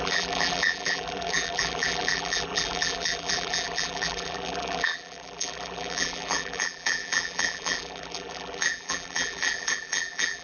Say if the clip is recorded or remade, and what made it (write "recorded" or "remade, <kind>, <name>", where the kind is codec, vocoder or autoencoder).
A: remade, vocoder, BigVGAN v2